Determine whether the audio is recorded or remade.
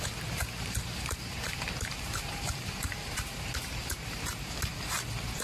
remade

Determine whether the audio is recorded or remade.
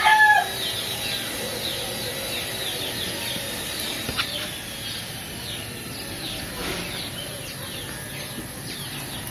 recorded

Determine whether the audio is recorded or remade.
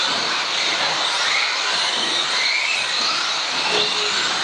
recorded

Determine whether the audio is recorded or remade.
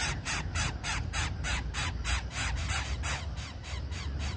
remade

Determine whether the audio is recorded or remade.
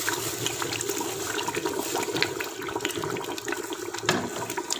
recorded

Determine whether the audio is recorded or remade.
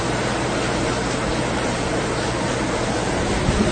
remade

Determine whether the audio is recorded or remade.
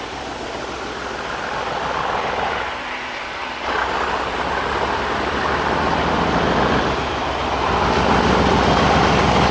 recorded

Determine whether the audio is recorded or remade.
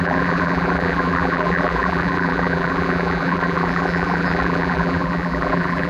remade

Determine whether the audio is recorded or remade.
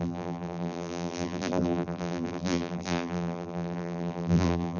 remade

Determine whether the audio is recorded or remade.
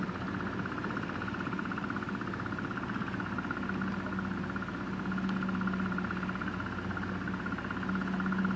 recorded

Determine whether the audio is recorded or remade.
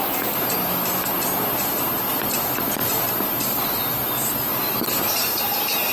recorded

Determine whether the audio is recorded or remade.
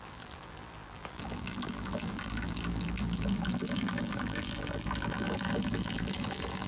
remade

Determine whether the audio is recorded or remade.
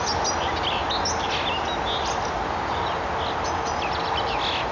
recorded